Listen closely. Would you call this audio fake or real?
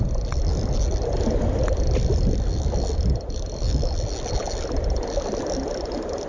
real